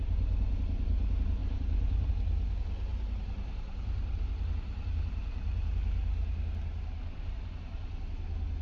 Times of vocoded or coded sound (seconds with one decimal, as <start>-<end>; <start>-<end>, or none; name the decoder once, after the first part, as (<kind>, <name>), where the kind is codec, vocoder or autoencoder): 1.4-2.1 (vocoder, BigVGAN v2); 2.9-7.5